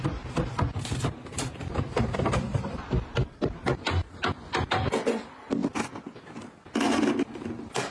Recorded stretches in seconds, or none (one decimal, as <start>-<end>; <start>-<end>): 0.0-7.9